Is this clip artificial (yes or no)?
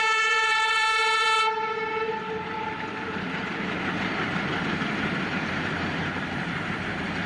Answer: yes